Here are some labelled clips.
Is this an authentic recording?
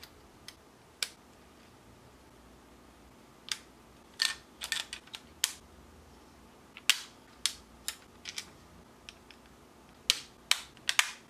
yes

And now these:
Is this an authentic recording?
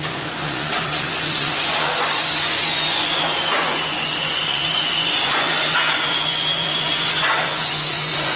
no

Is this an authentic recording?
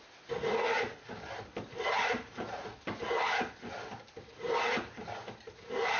yes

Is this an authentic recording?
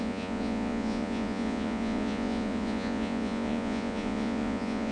no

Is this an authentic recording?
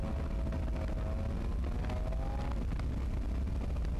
yes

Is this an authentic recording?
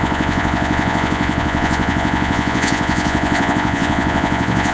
no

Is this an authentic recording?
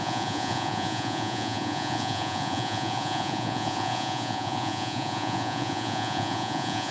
no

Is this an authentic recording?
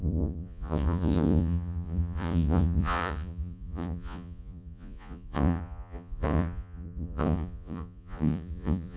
no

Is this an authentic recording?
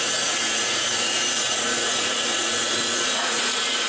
no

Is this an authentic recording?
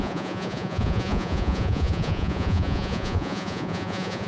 no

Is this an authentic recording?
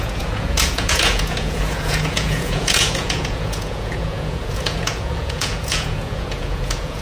no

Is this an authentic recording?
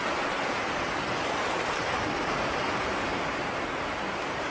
yes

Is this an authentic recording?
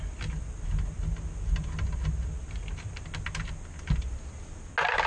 yes